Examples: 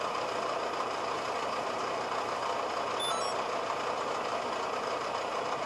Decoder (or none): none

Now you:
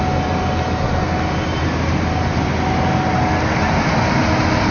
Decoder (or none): none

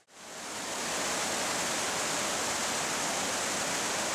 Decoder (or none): none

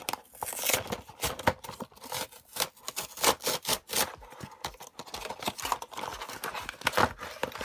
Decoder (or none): none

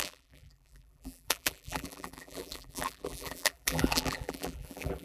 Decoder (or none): vocoder, BigVGAN v2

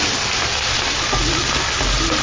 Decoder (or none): none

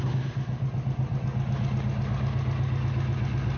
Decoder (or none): none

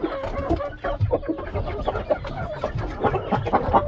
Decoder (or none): none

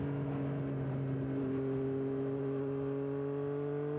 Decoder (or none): none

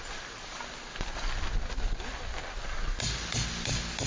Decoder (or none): none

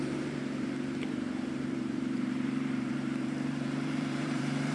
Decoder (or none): vocoder, BigVGAN v2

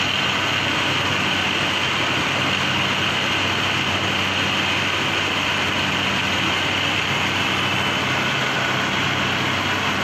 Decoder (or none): none